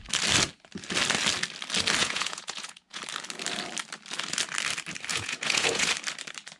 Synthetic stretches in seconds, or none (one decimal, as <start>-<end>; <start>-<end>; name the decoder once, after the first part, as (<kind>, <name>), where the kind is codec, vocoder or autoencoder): 2.0-3.0 (vocoder, Vocos); 5.1-5.9